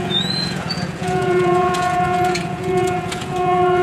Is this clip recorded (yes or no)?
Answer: no